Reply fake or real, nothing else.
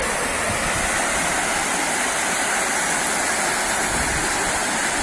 real